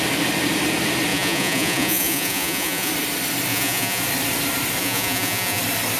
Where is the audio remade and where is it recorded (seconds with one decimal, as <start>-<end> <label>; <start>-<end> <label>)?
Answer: 0.0-1.1 recorded; 1.1-2.9 remade; 2.9-3.5 recorded; 3.5-4.0 remade; 4.0-4.8 recorded; 4.8-5.6 remade; 5.6-6.0 recorded